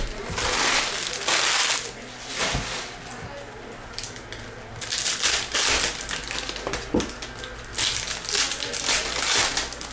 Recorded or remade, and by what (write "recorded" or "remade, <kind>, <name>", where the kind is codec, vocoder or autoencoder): recorded